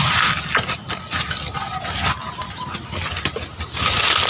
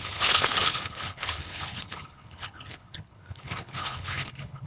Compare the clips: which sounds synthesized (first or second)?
second